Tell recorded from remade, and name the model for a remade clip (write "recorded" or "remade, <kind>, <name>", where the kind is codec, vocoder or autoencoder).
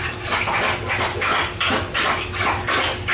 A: recorded